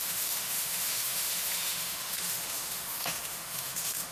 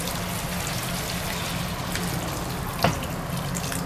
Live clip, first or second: second